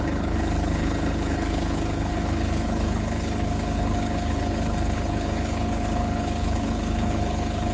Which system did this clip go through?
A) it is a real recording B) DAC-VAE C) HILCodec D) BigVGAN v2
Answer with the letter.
C